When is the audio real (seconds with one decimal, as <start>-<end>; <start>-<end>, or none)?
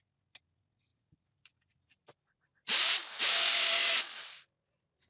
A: 0.0-0.9; 3.2-3.9; 4.5-5.1